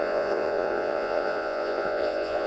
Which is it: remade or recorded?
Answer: remade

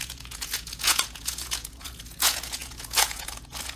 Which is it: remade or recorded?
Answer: remade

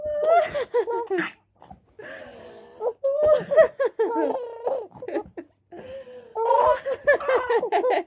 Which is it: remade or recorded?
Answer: recorded